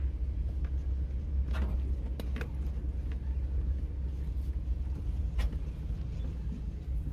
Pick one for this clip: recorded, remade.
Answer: recorded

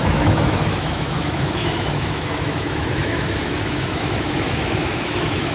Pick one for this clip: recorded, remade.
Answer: remade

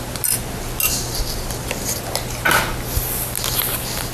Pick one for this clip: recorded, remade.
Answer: recorded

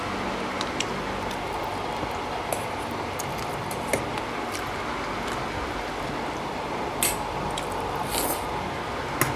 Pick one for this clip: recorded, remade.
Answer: recorded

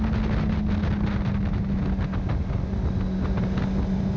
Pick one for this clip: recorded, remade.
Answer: recorded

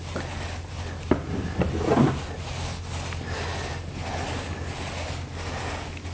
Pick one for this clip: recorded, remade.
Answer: recorded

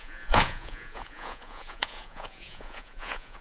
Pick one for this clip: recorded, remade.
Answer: remade